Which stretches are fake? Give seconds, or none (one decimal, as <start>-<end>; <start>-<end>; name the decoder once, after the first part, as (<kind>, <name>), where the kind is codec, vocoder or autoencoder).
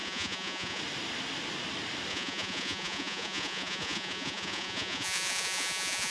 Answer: 0.0-0.8 (vocoder, Vocos); 2.1-6.1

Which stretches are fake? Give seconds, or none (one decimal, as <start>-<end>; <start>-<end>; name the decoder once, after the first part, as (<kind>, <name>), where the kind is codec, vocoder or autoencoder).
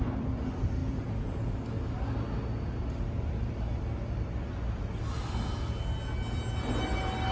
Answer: 0.8-1.5 (vocoder, Vocos)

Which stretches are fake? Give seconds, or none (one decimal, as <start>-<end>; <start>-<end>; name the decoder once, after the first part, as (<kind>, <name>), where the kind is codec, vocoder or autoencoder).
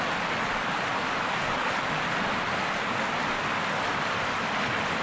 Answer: none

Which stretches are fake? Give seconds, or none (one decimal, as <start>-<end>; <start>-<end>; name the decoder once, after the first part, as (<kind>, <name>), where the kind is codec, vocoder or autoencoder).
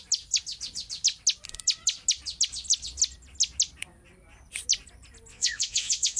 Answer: 5.3-6.2 (vocoder, Vocos)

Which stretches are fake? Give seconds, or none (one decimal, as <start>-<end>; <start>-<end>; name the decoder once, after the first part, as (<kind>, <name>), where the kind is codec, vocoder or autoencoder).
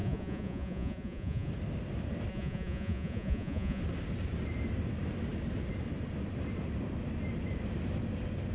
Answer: 0.0-1.5 (vocoder, Vocos); 2.3-3.8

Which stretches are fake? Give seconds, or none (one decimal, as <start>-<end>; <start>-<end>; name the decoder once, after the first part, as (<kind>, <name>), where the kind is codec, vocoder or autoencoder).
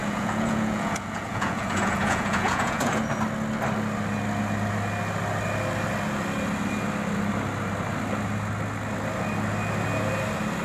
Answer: 0.0-3.0 (vocoder, Vocos)